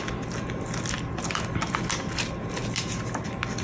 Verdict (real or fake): real